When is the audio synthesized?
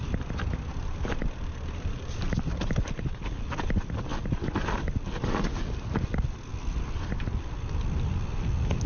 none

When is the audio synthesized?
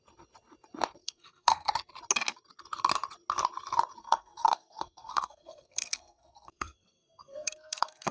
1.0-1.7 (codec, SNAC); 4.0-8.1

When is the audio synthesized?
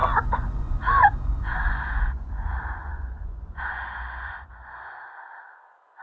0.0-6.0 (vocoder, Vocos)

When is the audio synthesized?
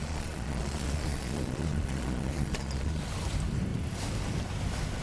0.0-3.0 (vocoder, Vocos)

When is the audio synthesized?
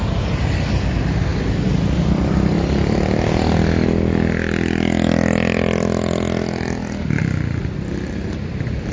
none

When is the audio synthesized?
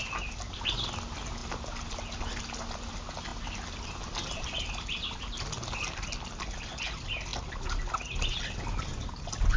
none